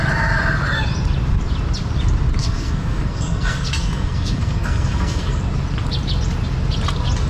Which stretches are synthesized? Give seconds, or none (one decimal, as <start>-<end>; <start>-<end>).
2.4-5.4